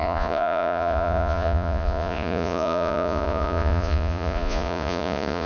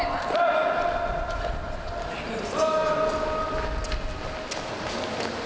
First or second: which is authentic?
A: second